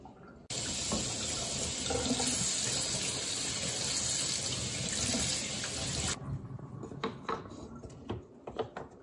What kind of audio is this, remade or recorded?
recorded